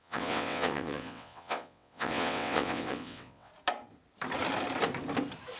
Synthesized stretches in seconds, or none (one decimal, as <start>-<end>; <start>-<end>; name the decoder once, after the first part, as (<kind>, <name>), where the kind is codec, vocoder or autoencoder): 0.0-3.5 (vocoder, WaveNeXt)